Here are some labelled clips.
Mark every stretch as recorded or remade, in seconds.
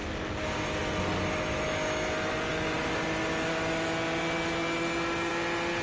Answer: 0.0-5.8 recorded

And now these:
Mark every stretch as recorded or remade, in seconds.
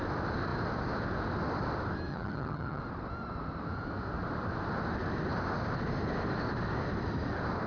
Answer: 0.0-2.1 recorded; 2.1-2.8 remade; 2.8-7.7 recorded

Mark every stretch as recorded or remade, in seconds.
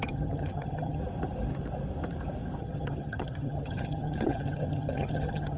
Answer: 0.0-1.0 remade; 1.0-2.6 recorded; 2.6-5.6 remade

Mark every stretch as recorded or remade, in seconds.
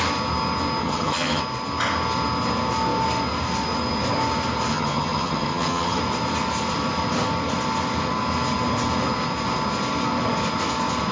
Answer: 0.0-0.8 recorded; 0.8-1.4 remade; 1.4-4.7 recorded; 4.7-6.0 remade; 6.0-11.1 recorded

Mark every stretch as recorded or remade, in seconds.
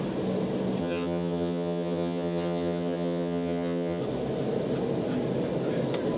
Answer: 0.0-0.8 recorded; 0.8-4.0 remade; 4.0-6.2 recorded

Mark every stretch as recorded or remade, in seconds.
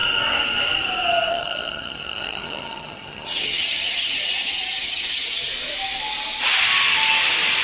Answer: 0.0-1.3 recorded; 1.3-5.5 remade; 5.5-7.6 recorded